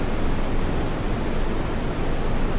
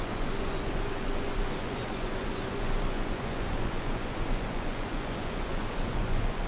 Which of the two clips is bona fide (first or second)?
first